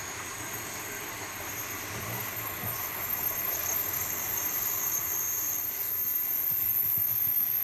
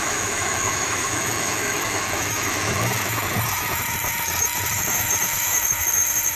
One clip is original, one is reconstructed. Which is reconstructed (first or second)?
second